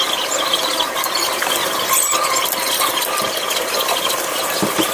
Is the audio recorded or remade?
remade